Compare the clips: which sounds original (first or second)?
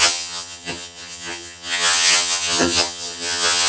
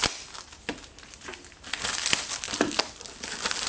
second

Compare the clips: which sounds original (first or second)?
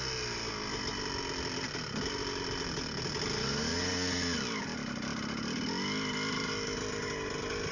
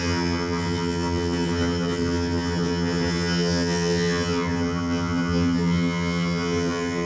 first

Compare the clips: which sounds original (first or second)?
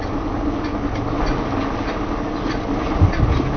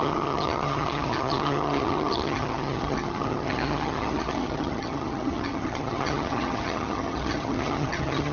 first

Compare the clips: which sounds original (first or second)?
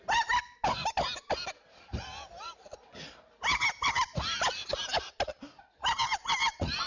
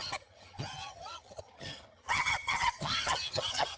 first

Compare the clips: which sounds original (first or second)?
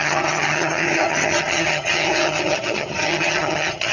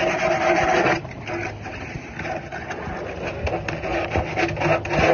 second